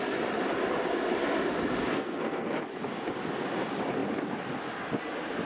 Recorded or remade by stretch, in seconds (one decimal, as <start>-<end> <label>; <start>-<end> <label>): 0.0-1.9 recorded; 1.9-2.5 remade; 2.5-5.5 recorded